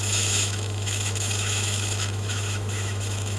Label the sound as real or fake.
fake